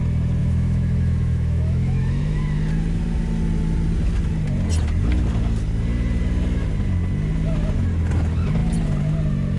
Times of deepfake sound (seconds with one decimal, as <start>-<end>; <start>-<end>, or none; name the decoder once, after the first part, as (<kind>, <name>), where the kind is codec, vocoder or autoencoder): 0.4-2.4 (autoencoder, DAC-VAE)